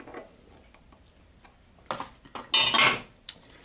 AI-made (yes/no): no